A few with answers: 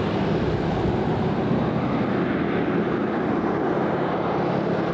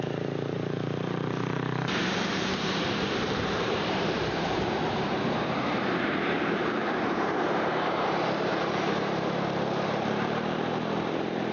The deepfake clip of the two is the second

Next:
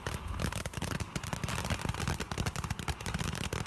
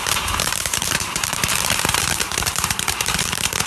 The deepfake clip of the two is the second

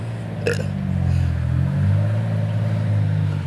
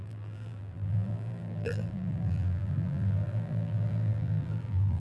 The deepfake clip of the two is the second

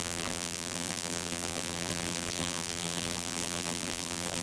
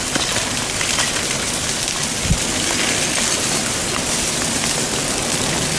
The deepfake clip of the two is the first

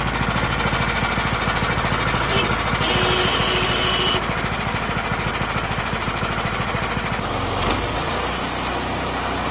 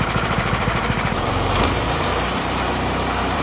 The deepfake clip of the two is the second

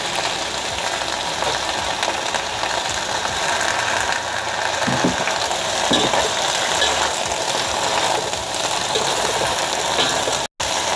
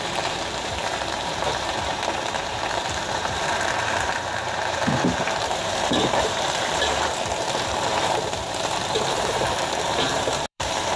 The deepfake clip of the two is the second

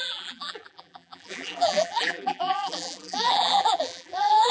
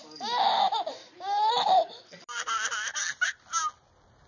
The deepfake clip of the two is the first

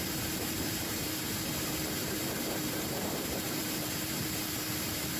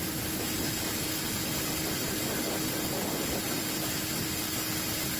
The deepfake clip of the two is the first